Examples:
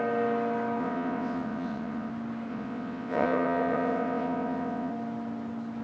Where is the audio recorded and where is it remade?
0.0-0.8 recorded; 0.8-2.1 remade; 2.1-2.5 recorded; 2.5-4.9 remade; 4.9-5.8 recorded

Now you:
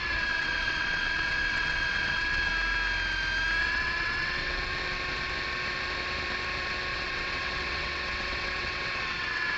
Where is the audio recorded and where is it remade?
0.0-2.5 remade; 2.5-3.6 recorded; 3.6-4.7 remade; 4.7-6.9 recorded; 6.9-9.6 remade

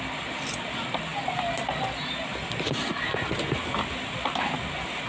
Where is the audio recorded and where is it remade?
0.0-5.1 recorded

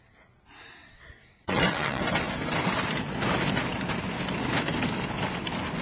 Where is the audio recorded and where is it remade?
0.0-0.8 recorded; 0.8-2.0 remade; 2.0-5.8 recorded

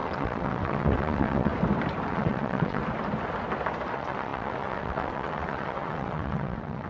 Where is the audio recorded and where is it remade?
0.0-1.5 remade; 1.5-2.1 recorded; 2.1-2.8 remade; 2.8-3.9 recorded; 3.9-6.9 remade

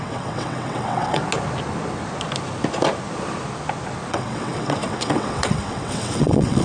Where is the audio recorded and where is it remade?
0.0-1.2 remade; 1.2-4.1 recorded; 4.1-6.6 remade

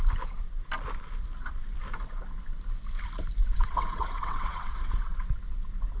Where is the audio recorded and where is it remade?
0.0-3.4 recorded; 3.4-5.4 remade; 5.4-6.0 recorded

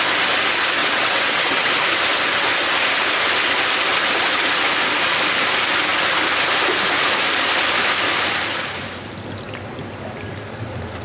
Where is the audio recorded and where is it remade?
0.0-0.8 recorded; 0.8-1.7 remade; 1.7-11.0 recorded